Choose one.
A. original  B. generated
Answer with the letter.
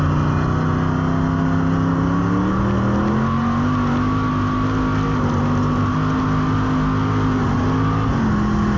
A